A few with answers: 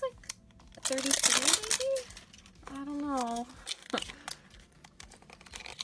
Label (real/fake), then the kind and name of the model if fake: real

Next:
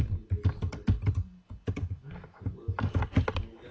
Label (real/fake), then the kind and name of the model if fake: real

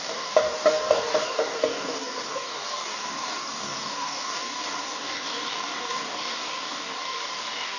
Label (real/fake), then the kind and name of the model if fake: fake, codec, DAC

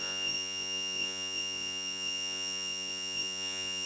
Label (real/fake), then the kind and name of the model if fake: fake, vocoder, Vocos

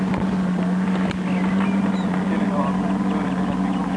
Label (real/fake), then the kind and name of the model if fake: real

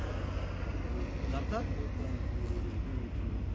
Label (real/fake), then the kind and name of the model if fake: real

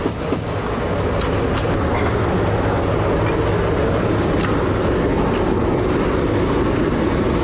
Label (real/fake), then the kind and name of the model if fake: real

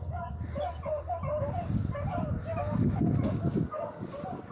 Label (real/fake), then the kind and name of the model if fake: real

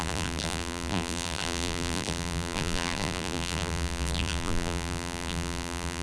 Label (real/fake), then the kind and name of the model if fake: fake, vocoder, BigVGAN v2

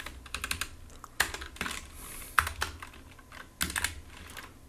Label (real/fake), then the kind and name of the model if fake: real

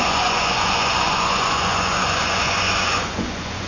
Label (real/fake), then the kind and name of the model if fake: fake, vocoder, Vocos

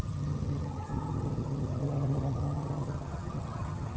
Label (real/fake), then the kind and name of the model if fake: fake, vocoder, HiFi-GAN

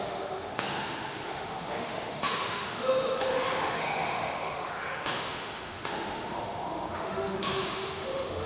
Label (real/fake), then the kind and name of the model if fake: fake, autoencoder, DAC-VAE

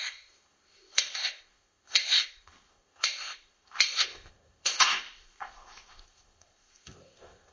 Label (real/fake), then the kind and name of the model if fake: fake, codec, ZipCodec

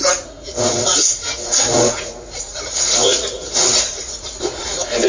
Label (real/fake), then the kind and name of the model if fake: fake, vocoder, Vocos